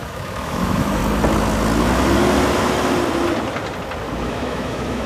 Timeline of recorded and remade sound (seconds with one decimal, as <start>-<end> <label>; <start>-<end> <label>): 0.0-1.0 remade; 1.0-4.1 recorded; 4.1-5.1 remade